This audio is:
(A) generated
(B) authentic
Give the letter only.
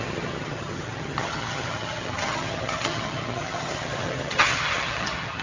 A